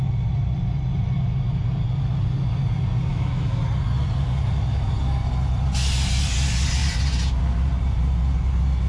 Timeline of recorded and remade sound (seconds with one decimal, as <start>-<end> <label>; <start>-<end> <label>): 0.0-3.1 recorded; 3.1-3.6 remade; 3.6-8.9 recorded